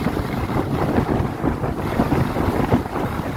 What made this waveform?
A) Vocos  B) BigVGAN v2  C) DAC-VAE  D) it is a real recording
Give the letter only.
D